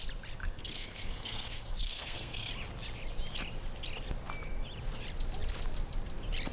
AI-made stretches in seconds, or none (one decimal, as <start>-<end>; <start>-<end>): 0.4-2.5